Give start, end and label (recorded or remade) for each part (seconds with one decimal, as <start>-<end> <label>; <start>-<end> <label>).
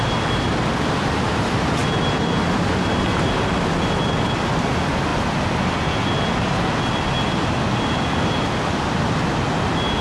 0.0-10.0 recorded